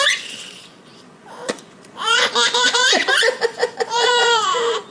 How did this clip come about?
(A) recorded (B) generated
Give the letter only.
B